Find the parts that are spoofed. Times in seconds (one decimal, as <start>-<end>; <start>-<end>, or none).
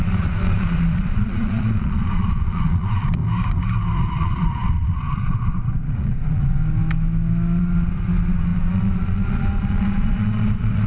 0.0-3.2; 4.0-6.6; 7.6-10.9